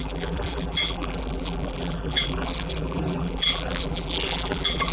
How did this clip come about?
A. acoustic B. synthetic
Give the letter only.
B